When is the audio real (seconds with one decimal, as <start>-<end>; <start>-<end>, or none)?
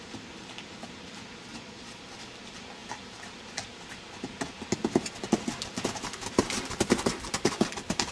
0.0-1.5; 2.0-8.1